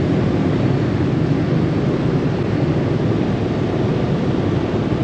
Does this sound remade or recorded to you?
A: recorded